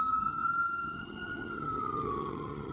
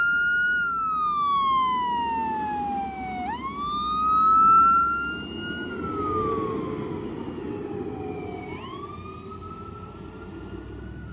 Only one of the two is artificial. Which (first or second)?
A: first